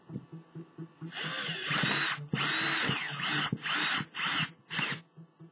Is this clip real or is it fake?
real